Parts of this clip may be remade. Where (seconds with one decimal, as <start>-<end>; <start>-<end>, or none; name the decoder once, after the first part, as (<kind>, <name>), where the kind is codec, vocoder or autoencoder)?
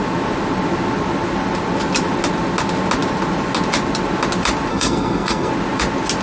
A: 4.7-5.5 (codec, SNAC)